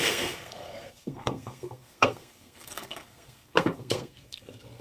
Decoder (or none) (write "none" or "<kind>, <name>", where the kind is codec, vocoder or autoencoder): codec, SNAC